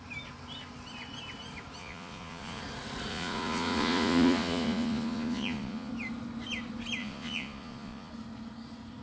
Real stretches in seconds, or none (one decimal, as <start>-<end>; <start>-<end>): 0.0-1.8; 2.6-3.1; 5.9-7.0; 8.1-9.0